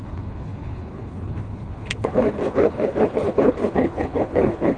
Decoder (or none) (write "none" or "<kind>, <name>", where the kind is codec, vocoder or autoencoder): codec, HILCodec